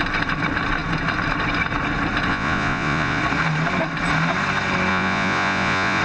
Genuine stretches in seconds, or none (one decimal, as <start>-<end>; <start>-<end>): 0.0-2.3; 3.2-4.9